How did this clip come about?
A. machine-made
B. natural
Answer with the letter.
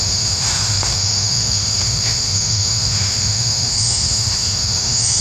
A